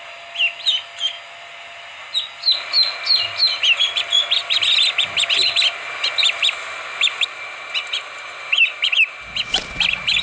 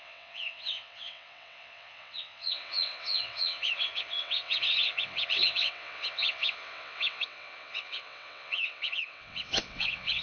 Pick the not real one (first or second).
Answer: second